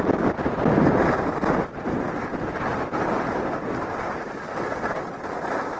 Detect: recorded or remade recorded